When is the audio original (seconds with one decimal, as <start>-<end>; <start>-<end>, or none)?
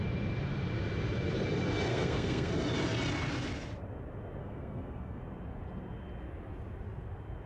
0.0-1.9; 2.5-4.4; 5.2-7.5